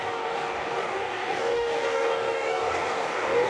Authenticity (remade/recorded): remade